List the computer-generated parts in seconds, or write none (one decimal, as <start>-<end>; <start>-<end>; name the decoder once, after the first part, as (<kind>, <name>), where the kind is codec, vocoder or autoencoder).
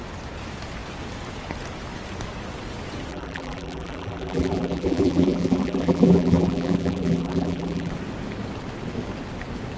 3.1-7.9 (vocoder, BigVGAN v2)